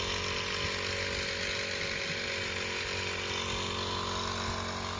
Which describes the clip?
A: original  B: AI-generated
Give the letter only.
A